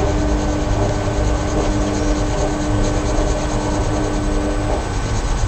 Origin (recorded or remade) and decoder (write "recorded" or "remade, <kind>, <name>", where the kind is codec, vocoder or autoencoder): recorded